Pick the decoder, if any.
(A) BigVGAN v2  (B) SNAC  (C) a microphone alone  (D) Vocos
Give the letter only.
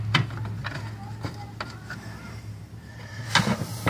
C